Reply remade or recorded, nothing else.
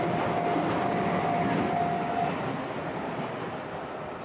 recorded